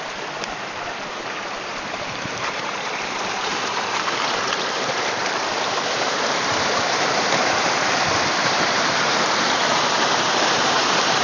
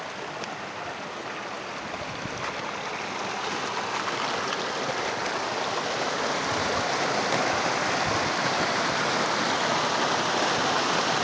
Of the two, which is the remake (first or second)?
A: first